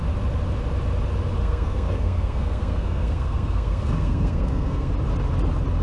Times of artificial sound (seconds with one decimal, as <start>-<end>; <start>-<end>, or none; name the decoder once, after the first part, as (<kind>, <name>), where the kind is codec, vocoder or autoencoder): 1.4-4.9 (codec, SNAC)